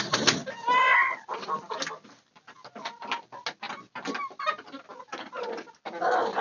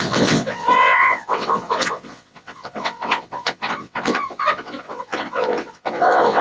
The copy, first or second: second